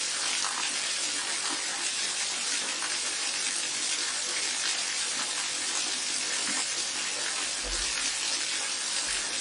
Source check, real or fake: real